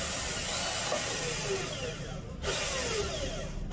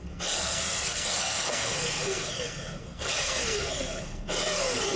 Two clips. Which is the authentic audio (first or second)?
first